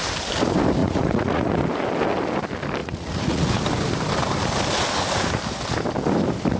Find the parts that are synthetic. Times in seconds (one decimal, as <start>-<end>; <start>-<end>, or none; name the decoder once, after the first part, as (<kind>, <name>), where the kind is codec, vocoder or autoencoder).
0.8-1.6 (vocoder, Vocos); 2.8-3.5